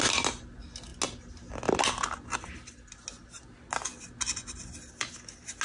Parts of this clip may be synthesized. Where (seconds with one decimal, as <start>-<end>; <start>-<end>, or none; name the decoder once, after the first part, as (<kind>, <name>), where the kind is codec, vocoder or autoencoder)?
none